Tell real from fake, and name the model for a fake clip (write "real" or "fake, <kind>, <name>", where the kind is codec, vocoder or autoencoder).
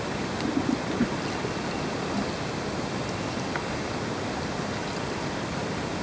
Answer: real